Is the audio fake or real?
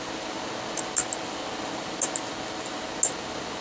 real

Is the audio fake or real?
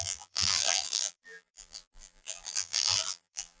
fake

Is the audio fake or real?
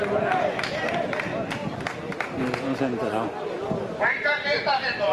real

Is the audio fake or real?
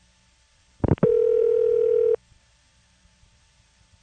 fake